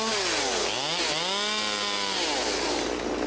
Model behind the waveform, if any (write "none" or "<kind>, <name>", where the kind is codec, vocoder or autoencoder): none